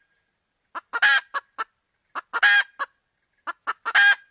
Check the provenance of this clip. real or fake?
real